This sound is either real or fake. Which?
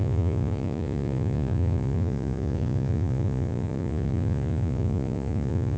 fake